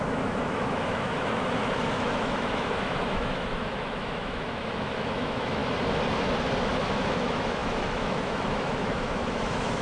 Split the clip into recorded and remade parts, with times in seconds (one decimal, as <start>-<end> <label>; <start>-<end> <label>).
0.0-5.6 remade; 5.6-6.6 recorded; 6.6-9.8 remade